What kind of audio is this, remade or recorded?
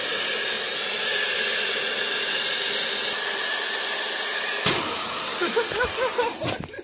recorded